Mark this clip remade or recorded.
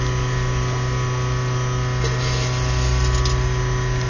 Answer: recorded